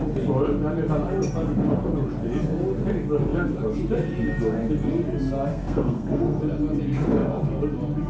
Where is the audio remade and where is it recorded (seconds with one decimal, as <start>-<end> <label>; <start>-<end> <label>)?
0.0-5.5 recorded; 5.5-6.4 remade; 6.4-8.1 recorded